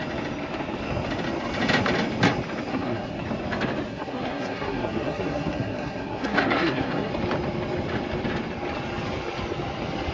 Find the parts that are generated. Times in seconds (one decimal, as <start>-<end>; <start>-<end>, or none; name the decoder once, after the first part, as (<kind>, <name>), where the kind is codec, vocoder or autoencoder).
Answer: 2.7-3.2 (codec, SNAC); 3.9-7.1